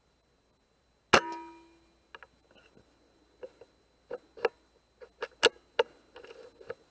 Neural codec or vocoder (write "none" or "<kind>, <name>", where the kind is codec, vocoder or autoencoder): none